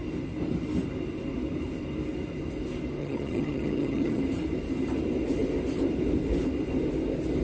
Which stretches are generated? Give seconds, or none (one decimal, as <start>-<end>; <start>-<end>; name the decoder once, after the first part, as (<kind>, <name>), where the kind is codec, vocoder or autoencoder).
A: 3.0-4.2 (vocoder, HiFi-GAN)